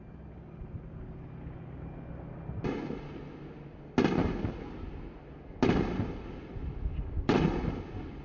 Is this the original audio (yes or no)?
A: yes